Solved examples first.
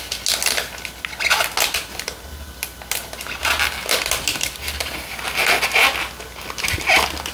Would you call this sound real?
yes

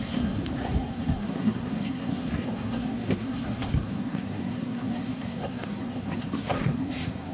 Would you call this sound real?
no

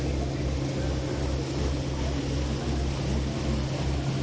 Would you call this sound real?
yes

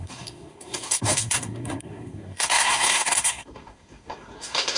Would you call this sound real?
no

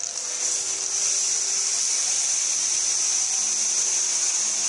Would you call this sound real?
yes